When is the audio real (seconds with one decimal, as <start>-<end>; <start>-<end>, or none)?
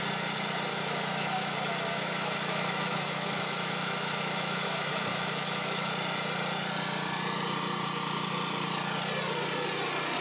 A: 0.0-0.7; 5.9-10.2